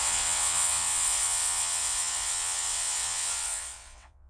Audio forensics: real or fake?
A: fake